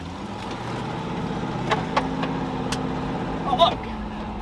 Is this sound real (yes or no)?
yes